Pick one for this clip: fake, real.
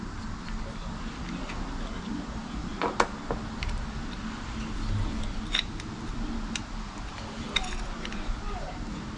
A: real